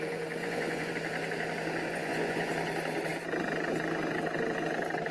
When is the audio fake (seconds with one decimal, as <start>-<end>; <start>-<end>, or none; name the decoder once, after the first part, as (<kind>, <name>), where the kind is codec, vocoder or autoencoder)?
0.4-0.9 (vocoder, Vocos); 1.9-2.5